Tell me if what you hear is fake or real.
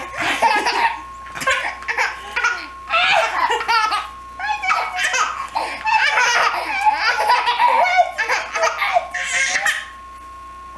real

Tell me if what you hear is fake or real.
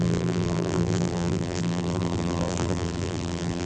fake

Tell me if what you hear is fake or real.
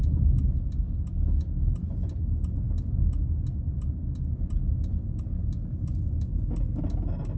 real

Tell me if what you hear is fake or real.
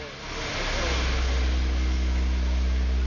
real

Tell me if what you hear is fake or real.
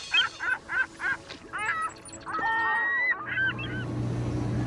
real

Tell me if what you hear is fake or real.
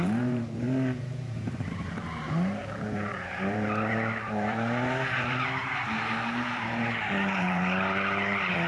fake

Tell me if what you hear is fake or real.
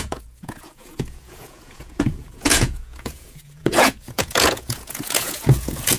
fake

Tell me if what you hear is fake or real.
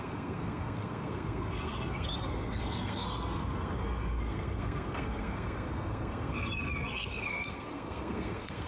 fake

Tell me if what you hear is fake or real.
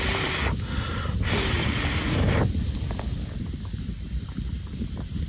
real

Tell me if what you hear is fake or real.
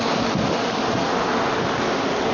real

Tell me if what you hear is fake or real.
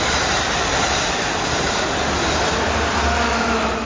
real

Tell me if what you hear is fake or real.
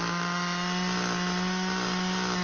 real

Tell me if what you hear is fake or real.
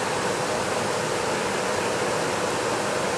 real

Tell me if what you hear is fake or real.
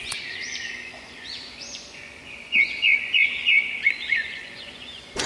fake